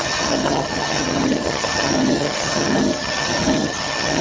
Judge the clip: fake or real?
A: fake